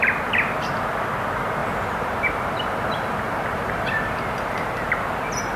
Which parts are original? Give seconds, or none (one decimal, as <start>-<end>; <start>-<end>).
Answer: 0.0-1.6; 5.0-5.6